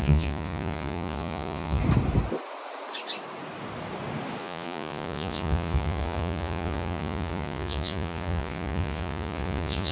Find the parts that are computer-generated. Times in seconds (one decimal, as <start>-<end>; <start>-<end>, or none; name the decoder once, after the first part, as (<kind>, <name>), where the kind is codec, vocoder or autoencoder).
0.0-1.8 (vocoder, Vocos); 4.4-9.9